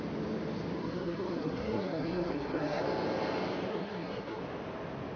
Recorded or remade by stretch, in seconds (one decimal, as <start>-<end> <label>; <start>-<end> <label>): 0.0-0.8 recorded; 0.8-2.8 remade; 2.8-3.7 recorded; 3.7-4.4 remade; 4.4-5.2 recorded